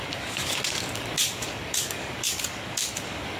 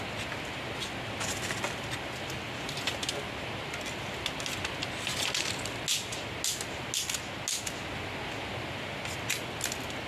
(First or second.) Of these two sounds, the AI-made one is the first